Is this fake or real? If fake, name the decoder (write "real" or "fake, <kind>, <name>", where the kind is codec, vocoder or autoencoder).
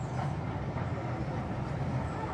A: real